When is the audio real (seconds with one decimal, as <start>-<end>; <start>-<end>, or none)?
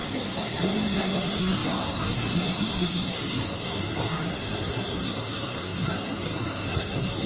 none